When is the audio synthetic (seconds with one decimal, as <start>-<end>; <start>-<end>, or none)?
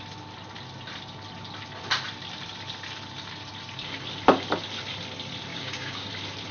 5.5-6.1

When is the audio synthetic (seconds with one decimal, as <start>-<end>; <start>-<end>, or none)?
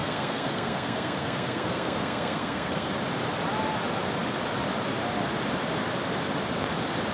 0.0-2.9